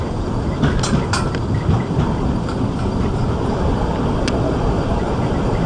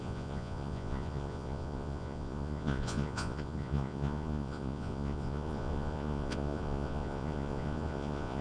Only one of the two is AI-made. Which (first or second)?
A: second